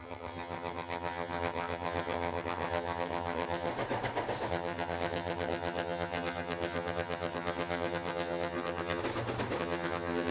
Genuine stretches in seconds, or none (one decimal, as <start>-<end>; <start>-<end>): 3.7-4.5; 9.0-9.6